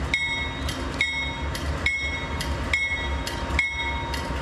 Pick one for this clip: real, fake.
real